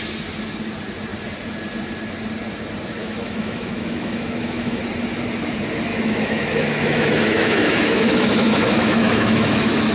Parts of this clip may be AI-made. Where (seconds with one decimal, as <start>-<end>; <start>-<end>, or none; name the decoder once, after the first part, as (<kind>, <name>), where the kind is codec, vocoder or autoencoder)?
3.0-4.8 (autoencoder, DAC-VAE); 5.9-9.9